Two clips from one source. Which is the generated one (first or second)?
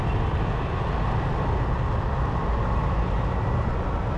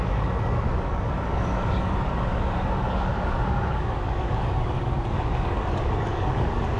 second